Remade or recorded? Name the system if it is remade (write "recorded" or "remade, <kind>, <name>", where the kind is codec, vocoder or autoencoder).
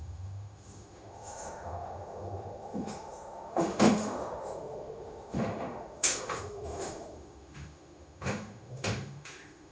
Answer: remade, autoencoder, DAC-VAE